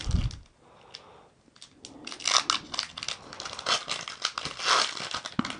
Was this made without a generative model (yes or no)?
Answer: yes